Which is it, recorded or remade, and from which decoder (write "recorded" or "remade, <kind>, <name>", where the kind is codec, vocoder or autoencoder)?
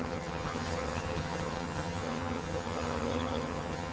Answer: remade, vocoder, HiFi-GAN